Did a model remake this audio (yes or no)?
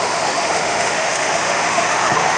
yes